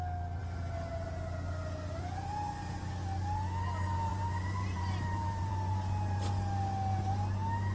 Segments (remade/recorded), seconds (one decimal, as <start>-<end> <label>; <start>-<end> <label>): 0.0-4.1 recorded; 4.1-5.5 remade; 5.5-7.7 recorded